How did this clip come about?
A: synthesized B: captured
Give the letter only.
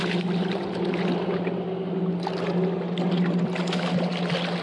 B